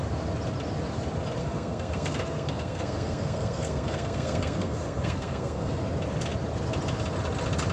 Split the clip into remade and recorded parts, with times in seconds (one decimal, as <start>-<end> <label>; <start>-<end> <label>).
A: 0.0-1.4 recorded; 1.4-5.8 remade; 5.8-7.7 recorded

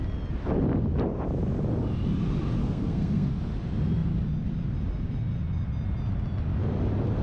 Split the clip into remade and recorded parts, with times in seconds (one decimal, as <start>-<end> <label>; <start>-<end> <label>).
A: 0.0-2.6 recorded; 2.6-3.4 remade; 3.4-7.2 recorded